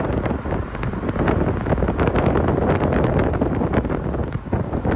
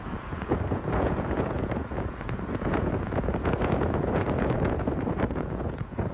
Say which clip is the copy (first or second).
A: second